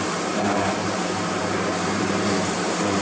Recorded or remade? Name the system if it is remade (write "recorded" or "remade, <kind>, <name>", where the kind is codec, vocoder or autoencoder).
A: remade, vocoder, BigVGAN v2